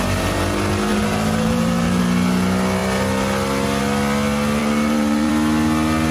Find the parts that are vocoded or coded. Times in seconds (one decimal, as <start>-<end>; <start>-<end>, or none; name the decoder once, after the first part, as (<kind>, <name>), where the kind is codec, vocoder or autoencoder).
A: 0.9-2.0 (vocoder, BigVGAN v2); 4.6-5.3